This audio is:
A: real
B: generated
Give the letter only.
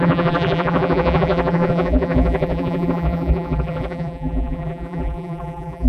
B